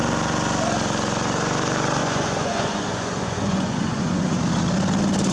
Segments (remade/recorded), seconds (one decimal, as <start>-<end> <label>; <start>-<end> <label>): 0.0-2.0 recorded; 2.0-4.4 remade; 4.4-5.3 recorded